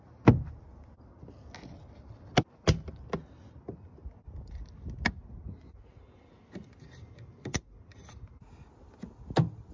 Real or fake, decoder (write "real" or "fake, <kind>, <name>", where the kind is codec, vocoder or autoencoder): real